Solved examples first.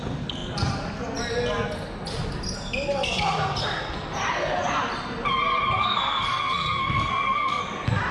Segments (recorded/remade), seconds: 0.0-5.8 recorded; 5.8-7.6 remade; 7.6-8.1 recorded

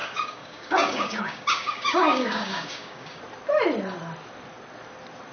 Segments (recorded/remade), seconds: 0.0-3.2 remade; 3.2-5.3 recorded